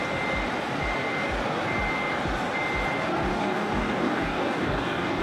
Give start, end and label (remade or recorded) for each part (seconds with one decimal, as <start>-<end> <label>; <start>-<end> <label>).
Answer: 0.0-3.3 recorded; 3.3-5.2 remade